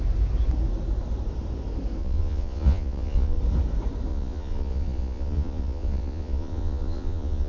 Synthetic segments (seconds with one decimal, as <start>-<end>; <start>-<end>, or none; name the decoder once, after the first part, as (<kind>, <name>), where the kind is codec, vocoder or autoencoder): 2.0-3.4 (vocoder, Vocos); 4.1-7.5